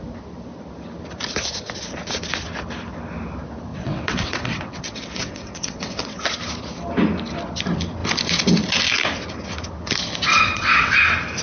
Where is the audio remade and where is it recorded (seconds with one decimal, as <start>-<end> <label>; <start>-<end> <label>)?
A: 0.0-3.7 recorded; 3.7-6.2 remade; 6.2-10.3 recorded; 10.3-10.9 remade; 10.9-11.4 recorded

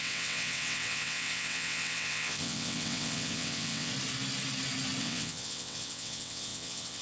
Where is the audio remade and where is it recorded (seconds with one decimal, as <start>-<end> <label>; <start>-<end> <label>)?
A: 0.0-3.9 remade; 3.9-5.0 recorded; 5.0-7.0 remade

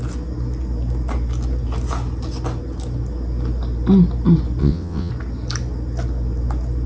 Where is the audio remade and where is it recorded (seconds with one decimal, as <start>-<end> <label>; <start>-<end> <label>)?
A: 0.0-4.6 recorded; 4.6-5.1 remade; 5.1-6.9 recorded

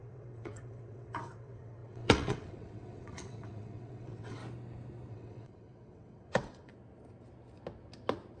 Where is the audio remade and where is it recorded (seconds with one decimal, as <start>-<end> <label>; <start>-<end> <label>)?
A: 0.0-4.4 remade; 4.4-5.1 recorded; 5.1-6.7 remade; 6.7-8.4 recorded